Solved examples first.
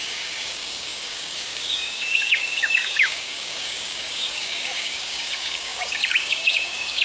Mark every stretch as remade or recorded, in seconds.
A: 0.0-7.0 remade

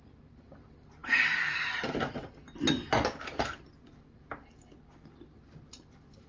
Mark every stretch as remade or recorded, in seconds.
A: 0.0-6.3 recorded

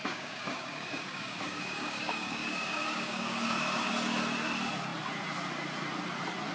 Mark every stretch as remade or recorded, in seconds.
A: 0.0-3.9 remade; 3.9-6.5 recorded

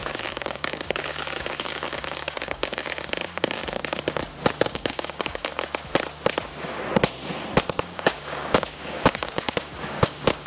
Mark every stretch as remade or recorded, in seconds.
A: 0.0-3.6 remade; 3.6-4.6 recorded; 4.6-5.5 remade; 5.5-7.8 recorded; 7.8-10.5 remade

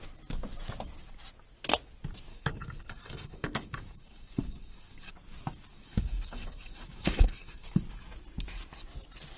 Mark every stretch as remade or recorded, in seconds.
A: 0.0-2.3 recorded; 2.3-5.1 remade; 5.1-5.7 recorded; 5.7-7.8 remade; 7.8-9.4 recorded

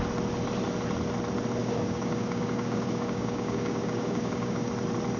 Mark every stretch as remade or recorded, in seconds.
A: 0.0-1.6 recorded; 1.6-4.7 remade; 4.7-5.2 recorded

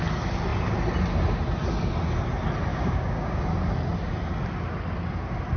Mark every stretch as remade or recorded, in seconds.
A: 0.0-2.7 recorded; 2.7-3.4 remade; 3.4-5.6 recorded